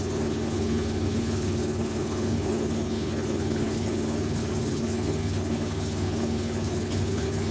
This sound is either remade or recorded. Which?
remade